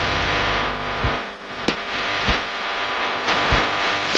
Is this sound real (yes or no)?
yes